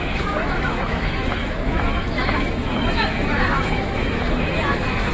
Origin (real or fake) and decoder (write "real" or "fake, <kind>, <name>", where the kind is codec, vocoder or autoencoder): fake, autoencoder, DAC-VAE